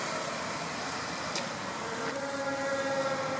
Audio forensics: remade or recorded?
remade